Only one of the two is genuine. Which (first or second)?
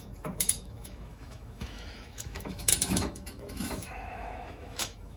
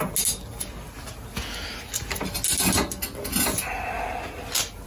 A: second